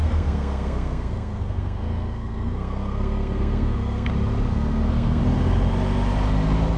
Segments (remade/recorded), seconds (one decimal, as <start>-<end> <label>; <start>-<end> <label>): 0.0-4.1 remade; 4.1-4.5 recorded; 4.5-5.2 remade; 5.2-6.8 recorded